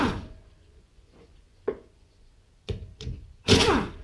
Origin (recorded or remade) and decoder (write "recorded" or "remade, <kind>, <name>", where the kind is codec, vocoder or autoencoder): remade, vocoder, Vocos